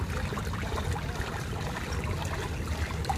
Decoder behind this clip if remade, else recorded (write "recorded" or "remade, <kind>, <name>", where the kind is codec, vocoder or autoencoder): recorded